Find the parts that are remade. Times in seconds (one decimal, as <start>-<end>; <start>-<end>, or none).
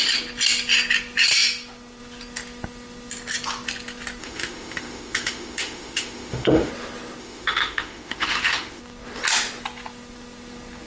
4.2-6.7; 7.2-8.8